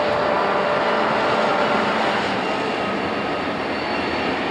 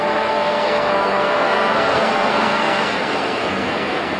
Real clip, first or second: first